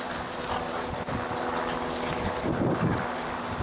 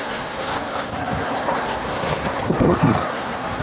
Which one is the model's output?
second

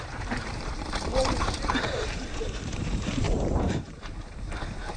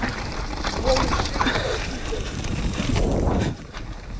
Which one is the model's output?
first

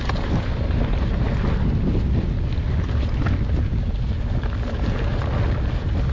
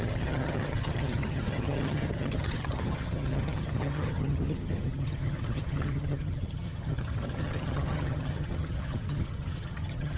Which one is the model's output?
second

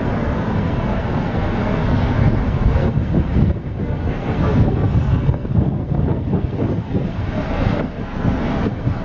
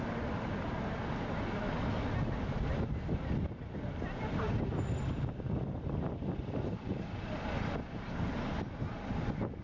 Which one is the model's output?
first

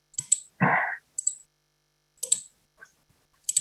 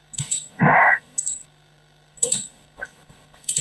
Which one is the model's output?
second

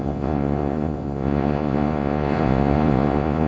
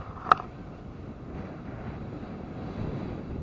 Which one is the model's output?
first